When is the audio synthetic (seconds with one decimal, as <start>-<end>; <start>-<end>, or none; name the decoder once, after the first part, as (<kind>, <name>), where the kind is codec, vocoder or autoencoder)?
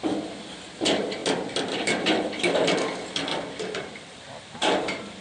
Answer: none